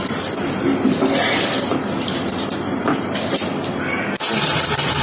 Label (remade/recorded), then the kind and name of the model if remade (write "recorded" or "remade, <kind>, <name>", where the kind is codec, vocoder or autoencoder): recorded